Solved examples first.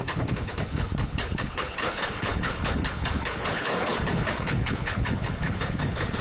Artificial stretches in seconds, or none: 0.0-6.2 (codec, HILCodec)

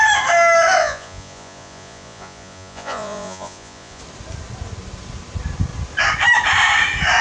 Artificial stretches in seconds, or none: 0.8-4.0 (vocoder, Vocos)

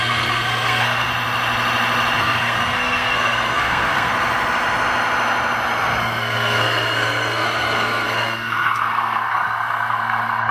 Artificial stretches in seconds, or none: 0.0-1.1 (codec, SNAC); 2.2-4.1; 6.0-10.5

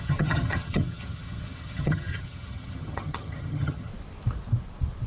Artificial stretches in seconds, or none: 0.0-3.9 (vocoder, HiFi-GAN)

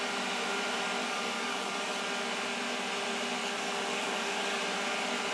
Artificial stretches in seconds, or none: 1.0-2.0 (codec, DAC); 3.4-4.6

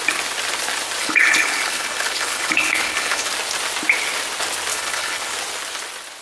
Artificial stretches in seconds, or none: 1.0-3.3 (codec, HILCodec); 4.7-5.3

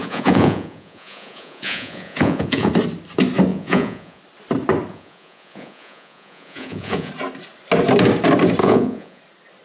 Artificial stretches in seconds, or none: 0.0-2.7 (vocoder, Vocos); 3.5-4.2; 4.9-7.1; 8.6-9.2